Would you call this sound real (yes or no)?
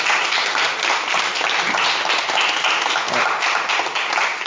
yes